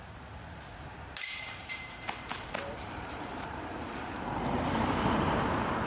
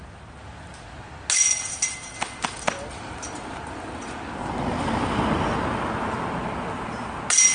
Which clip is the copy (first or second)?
first